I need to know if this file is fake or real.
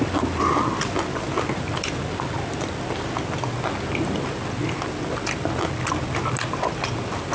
real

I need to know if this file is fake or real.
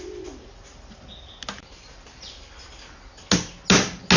real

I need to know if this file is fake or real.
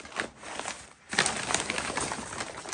real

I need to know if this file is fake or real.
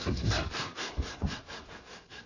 fake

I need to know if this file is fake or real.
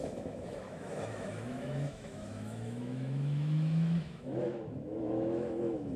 fake